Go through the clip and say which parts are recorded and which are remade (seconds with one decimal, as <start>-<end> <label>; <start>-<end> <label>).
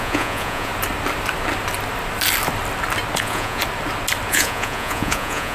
0.0-0.7 remade; 0.7-3.2 recorded; 3.2-3.6 remade; 3.6-4.3 recorded; 4.3-5.5 remade